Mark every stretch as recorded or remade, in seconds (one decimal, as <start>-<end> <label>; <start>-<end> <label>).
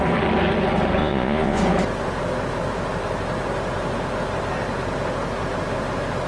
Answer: 0.0-1.0 recorded; 1.0-1.6 remade; 1.6-6.3 recorded